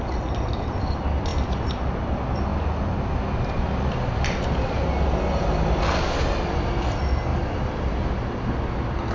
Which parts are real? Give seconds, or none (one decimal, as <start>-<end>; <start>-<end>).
0.0-9.1